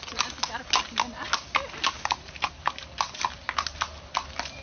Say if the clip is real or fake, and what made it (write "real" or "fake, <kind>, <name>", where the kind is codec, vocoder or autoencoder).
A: real